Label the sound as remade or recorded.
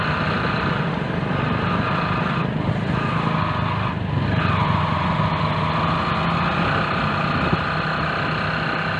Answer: recorded